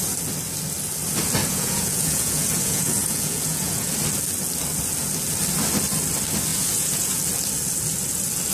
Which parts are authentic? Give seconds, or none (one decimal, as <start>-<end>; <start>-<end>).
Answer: 0.0-1.4; 3.9-6.5; 7.2-8.5